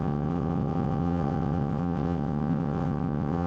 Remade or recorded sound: remade